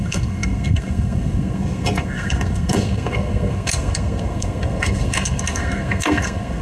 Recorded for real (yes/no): no